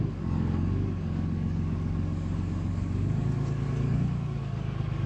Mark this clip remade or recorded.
remade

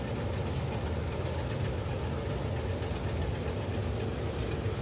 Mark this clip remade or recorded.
recorded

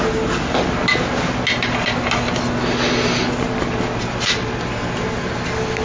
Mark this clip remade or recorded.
recorded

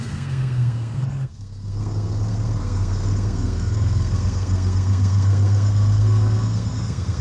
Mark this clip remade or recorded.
remade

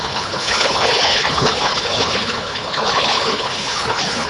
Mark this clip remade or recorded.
remade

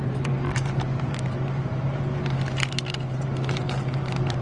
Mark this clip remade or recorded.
remade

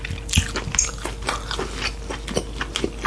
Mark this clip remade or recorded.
recorded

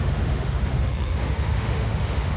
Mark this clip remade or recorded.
remade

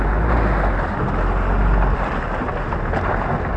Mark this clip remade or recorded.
recorded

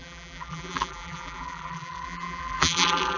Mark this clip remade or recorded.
remade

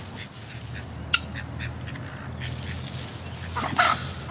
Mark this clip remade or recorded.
recorded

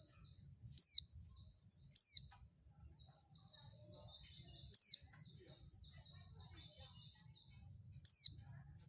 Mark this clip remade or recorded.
recorded